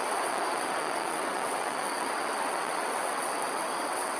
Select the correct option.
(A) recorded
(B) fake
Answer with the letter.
B